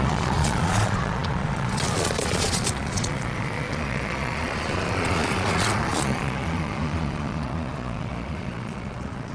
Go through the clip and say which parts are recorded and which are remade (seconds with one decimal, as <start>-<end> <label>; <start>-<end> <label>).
0.0-9.3 remade